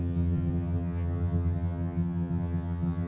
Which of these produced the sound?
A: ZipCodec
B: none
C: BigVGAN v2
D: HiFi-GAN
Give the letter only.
D